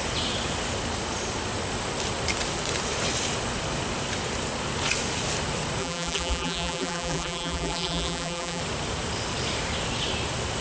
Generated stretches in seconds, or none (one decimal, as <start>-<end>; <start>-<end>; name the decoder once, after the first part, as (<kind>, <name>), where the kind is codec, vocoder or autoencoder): 5.8-8.6 (vocoder, BigVGAN v2)

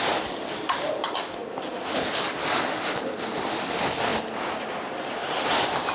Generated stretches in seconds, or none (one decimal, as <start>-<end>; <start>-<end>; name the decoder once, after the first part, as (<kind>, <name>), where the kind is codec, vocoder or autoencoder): 5.2-5.9 (vocoder, BigVGAN v2)

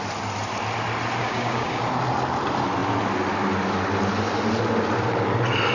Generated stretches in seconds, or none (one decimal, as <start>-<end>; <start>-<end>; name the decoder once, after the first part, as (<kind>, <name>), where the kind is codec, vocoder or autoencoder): 1.2-1.8 (codec, DAC)

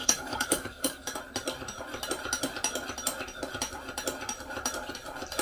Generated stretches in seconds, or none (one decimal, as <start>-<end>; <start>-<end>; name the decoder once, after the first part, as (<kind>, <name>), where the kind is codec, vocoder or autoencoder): 0.0-1.2 (codec, DAC)

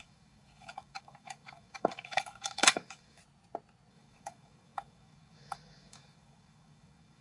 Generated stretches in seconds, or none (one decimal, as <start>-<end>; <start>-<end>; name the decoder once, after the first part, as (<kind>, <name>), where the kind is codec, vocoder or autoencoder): 0.0-3.2 (codec, DAC); 3.9-7.2

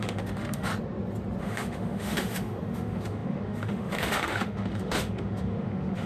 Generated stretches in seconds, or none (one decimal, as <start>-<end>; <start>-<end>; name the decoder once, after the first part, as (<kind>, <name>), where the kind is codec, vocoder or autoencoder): 0.0-0.7 (autoencoder, DAC-VAE); 1.4-6.1